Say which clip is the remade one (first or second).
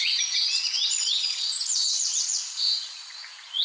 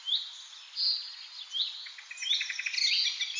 first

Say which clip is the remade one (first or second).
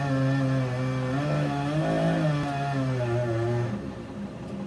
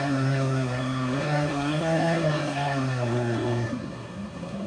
second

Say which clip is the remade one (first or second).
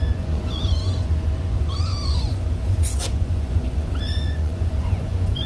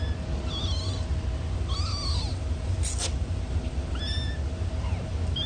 first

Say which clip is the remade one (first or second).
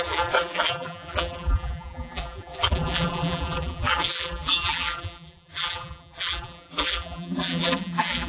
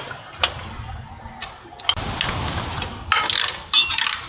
first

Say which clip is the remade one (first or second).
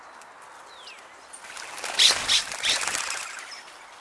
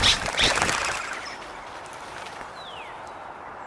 second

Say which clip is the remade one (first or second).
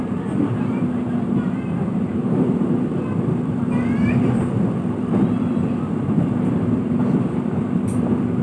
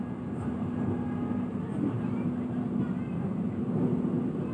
first